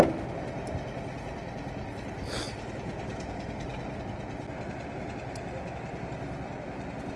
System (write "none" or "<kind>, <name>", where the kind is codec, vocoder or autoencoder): none